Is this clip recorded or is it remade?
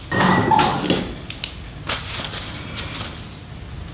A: recorded